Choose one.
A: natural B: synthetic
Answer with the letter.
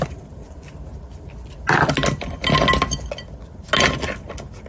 A